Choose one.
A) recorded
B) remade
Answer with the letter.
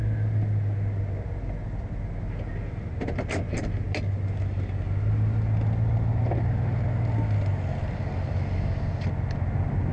A